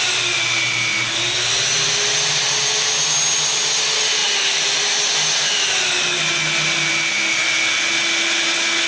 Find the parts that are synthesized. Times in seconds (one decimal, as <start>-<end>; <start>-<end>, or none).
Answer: none